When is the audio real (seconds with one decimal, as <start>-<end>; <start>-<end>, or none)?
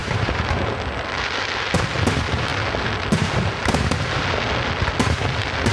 0.6-5.7